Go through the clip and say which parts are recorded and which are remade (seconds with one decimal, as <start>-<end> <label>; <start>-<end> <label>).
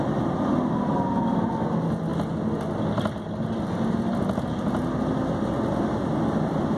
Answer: 0.0-6.8 recorded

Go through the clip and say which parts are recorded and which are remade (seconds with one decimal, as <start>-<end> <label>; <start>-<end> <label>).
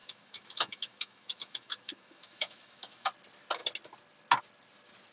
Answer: 0.0-3.1 remade; 3.1-5.1 recorded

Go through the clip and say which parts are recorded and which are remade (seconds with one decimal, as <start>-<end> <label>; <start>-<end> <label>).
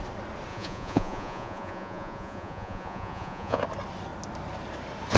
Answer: 0.0-0.5 recorded; 0.5-3.6 remade; 3.6-5.2 recorded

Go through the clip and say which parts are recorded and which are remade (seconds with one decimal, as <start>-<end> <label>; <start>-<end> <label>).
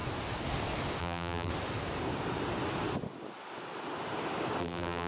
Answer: 0.0-1.0 recorded; 1.0-1.5 remade; 1.5-4.6 recorded; 4.6-5.1 remade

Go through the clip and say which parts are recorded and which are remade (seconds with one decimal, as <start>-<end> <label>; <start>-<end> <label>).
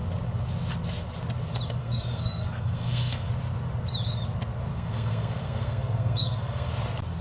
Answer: 0.0-1.8 recorded; 1.8-3.3 remade; 3.3-4.7 recorded; 4.7-6.7 remade; 6.7-7.2 recorded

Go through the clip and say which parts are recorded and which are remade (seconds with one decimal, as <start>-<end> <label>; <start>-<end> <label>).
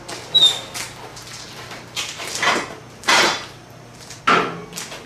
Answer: 0.0-1.1 recorded; 1.1-4.2 remade; 4.2-5.1 recorded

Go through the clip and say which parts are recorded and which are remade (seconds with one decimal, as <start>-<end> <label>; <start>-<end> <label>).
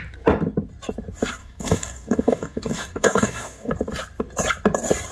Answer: 0.0-1.4 recorded; 1.4-3.7 remade; 3.7-5.1 recorded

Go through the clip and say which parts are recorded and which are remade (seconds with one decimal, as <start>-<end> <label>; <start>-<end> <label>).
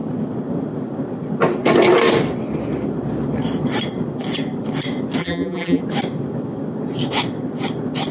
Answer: 0.0-5.2 recorded; 5.2-5.8 remade; 5.8-8.1 recorded